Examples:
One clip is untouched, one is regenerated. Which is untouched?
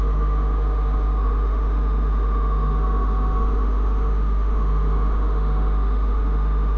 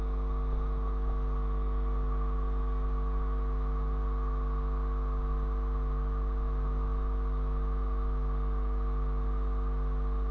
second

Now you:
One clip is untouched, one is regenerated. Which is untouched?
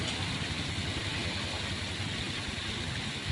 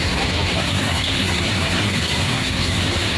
first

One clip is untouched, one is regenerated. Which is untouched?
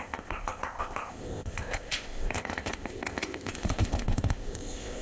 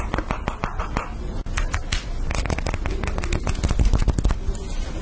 second